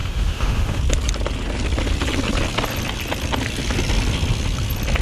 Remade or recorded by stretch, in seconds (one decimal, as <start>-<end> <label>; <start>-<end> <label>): 0.0-0.8 remade; 0.8-5.0 recorded